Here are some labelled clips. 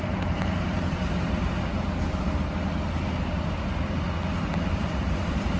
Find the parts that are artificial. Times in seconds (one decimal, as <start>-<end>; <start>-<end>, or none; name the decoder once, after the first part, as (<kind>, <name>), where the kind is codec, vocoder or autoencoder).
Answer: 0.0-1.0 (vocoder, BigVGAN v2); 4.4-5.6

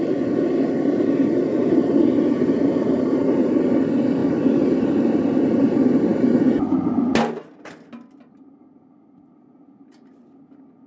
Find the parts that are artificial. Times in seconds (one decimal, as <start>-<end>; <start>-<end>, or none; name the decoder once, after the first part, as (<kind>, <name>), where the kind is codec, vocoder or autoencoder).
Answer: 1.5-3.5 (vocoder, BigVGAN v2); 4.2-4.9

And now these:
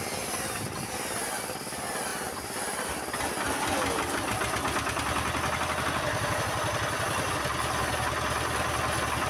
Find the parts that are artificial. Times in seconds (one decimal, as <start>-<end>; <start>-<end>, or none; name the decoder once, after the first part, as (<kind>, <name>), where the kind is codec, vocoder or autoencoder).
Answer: none